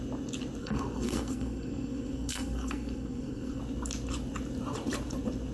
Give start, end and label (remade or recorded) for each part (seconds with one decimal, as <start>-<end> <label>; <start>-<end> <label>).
0.0-0.6 recorded; 0.6-3.6 remade; 3.6-5.5 recorded